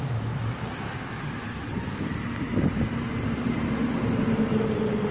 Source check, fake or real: real